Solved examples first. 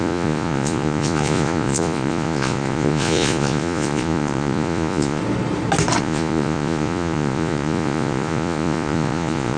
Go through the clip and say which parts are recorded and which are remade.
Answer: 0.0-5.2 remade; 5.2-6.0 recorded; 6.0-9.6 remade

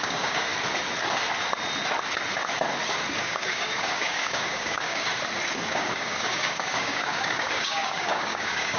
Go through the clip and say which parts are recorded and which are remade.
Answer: 0.0-0.5 remade; 0.5-3.2 recorded; 3.2-5.1 remade; 5.1-5.7 recorded; 5.7-8.8 remade

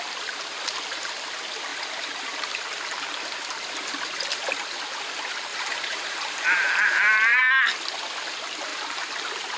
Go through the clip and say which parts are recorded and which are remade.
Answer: 0.0-1.7 recorded; 1.7-3.2 remade; 3.2-5.5 recorded; 5.5-7.4 remade; 7.4-8.7 recorded; 8.7-9.2 remade; 9.2-9.6 recorded

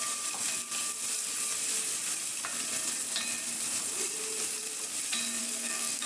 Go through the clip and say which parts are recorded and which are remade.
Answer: 0.0-5.4 recorded; 5.4-6.1 remade

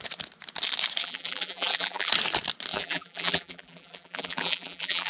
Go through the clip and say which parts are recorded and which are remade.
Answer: 0.0-1.0 recorded; 1.0-2.1 remade; 2.1-2.7 recorded; 2.7-5.1 remade

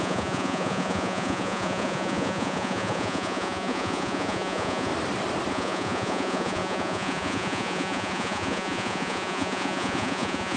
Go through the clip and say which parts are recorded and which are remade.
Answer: 0.0-4.9 remade; 4.9-5.5 recorded; 5.5-10.6 remade

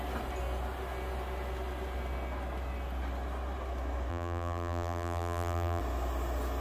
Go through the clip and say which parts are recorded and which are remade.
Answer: 0.0-4.1 recorded; 4.1-5.8 remade; 5.8-6.6 recorded